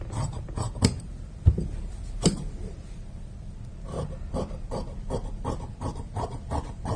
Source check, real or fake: fake